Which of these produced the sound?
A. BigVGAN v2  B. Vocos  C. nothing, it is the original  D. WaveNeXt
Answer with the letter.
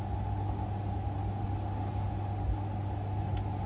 C